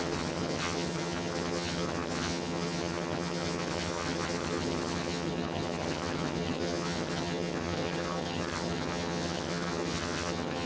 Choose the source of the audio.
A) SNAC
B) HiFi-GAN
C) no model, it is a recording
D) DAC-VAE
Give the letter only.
B